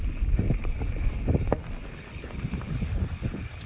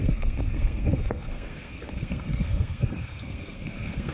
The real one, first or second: first